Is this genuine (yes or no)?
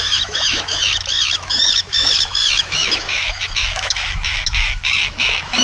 no